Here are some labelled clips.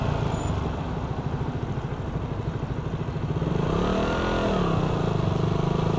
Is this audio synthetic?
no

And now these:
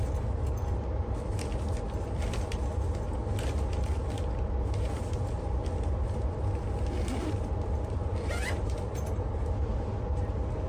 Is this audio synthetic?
no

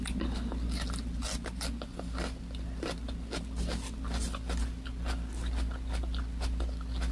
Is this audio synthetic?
no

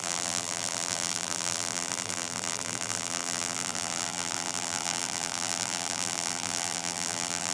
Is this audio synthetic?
yes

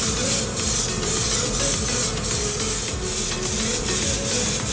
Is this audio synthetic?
no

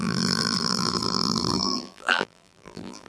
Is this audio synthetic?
yes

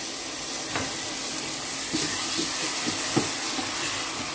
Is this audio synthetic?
no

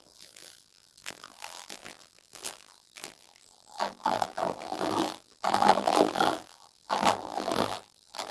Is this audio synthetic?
yes